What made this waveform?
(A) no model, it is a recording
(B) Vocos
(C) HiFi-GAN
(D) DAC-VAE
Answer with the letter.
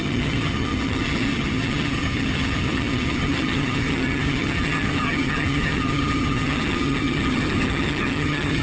C